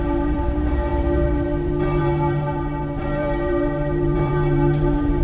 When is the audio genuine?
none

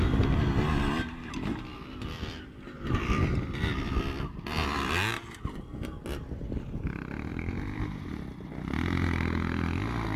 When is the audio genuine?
0.0-7.3; 8.1-10.2